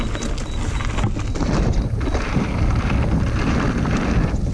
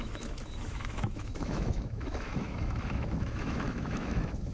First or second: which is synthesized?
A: second